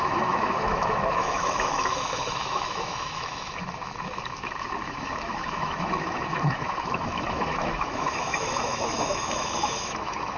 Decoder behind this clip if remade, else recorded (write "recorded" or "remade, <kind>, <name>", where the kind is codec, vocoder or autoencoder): remade, autoencoder, DAC-VAE